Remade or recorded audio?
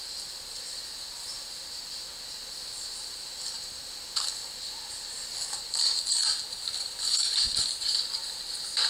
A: recorded